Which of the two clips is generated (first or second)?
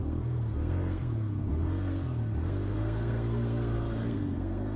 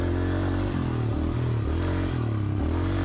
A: first